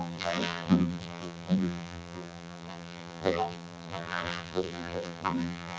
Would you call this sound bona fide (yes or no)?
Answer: no